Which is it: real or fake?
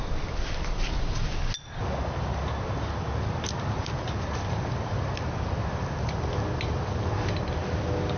real